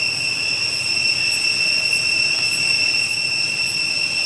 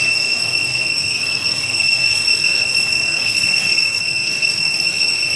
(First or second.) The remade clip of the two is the second